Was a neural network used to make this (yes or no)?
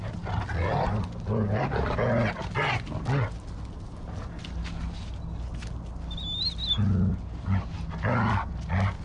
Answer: no